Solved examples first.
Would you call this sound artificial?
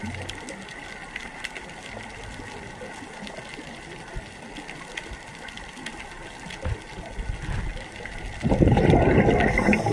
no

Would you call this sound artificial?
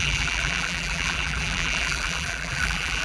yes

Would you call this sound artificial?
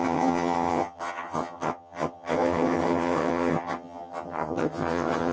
yes